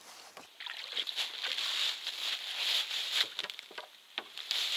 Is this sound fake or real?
real